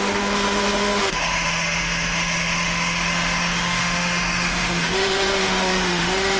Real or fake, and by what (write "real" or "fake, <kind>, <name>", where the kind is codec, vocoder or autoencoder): fake, autoencoder, DAC-VAE